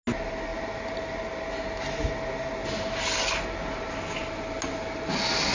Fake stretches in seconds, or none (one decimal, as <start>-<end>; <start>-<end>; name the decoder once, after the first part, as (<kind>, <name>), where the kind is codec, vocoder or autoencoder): none